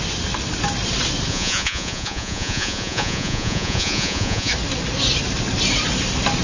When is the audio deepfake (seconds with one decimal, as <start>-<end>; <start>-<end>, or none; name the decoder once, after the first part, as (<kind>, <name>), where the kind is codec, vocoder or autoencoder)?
1.3-4.5 (vocoder, Vocos)